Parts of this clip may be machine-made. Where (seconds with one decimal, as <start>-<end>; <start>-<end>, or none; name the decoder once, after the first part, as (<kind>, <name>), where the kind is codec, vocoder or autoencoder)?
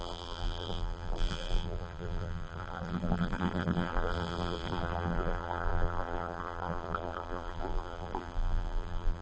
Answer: 0.0-9.2 (vocoder, BigVGAN v2)